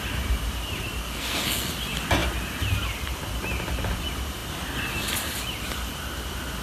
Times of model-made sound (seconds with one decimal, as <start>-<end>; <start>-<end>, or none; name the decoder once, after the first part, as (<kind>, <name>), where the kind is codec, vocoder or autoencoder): 1.0-1.7 (codec, SNAC)